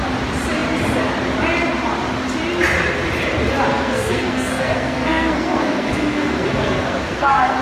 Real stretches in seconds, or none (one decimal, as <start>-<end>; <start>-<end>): 0.0-3.7